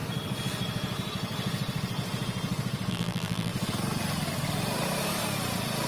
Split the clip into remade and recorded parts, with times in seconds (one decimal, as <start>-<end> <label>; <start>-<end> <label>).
0.0-2.9 recorded; 2.9-3.5 remade; 3.5-5.9 recorded